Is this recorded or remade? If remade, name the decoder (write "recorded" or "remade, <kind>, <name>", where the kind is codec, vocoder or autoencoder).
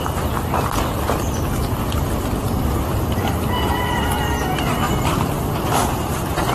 recorded